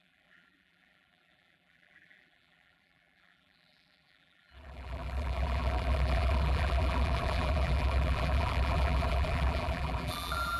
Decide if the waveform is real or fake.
fake